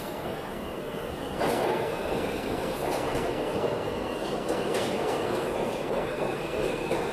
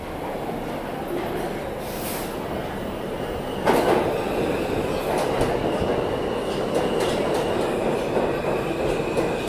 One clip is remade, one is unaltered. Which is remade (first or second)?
first